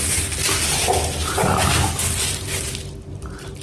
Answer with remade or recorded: recorded